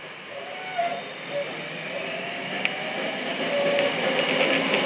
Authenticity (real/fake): real